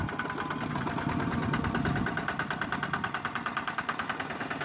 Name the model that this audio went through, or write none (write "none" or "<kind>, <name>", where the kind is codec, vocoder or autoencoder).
none